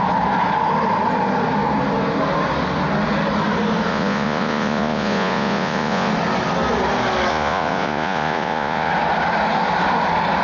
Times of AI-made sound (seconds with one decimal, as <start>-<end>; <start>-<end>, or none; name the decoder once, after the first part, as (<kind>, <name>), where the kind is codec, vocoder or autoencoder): 3.9-6.1 (vocoder, Vocos); 7.3-8.9